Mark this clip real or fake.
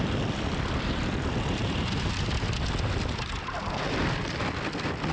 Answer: fake